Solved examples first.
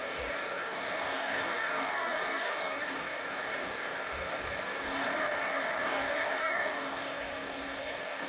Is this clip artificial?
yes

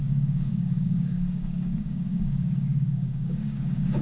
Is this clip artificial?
yes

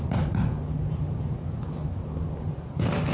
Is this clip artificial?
no